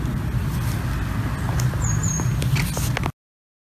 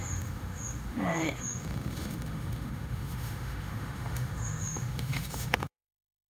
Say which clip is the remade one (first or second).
second